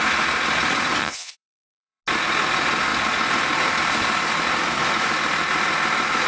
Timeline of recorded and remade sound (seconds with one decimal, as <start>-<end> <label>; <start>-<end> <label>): 0.0-1.0 recorded; 1.0-2.0 remade; 2.0-6.3 recorded